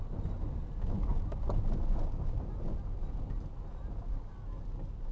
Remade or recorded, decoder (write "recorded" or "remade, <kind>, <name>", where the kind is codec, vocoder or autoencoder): recorded